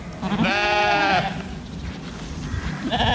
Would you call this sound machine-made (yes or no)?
no